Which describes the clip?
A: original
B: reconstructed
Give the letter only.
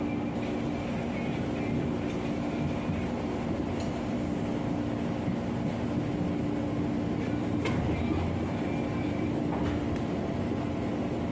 A